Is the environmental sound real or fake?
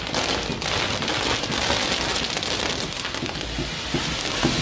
real